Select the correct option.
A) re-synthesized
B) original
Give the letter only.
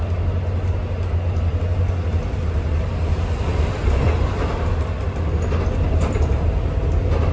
B